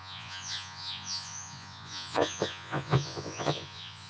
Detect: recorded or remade remade